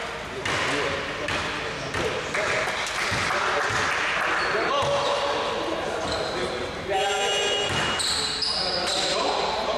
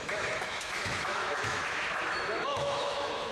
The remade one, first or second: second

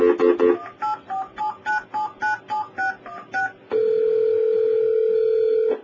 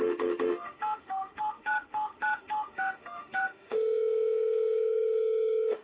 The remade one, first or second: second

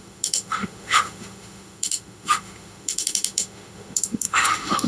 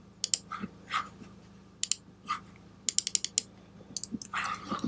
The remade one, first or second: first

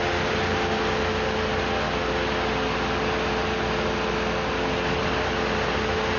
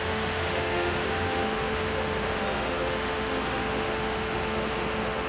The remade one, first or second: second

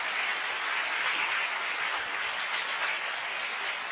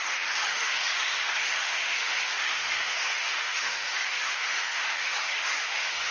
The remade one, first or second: second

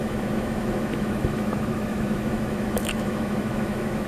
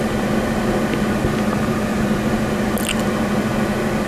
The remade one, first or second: first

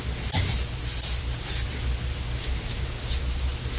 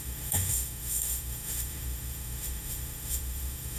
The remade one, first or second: second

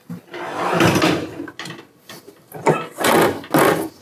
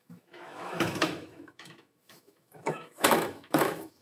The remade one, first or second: second